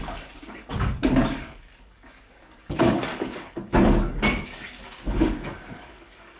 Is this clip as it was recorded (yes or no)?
no